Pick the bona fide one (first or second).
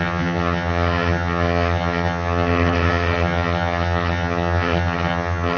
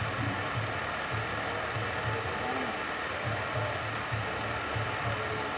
second